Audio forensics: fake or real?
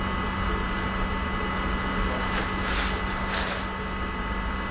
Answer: real